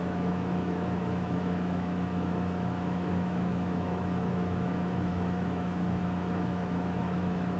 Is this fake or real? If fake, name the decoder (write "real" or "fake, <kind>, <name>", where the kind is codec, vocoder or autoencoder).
fake, autoencoder, DAC-VAE